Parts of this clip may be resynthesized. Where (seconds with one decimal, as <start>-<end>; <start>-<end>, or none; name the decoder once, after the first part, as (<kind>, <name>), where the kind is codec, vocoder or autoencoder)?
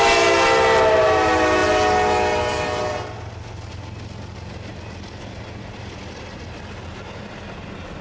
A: none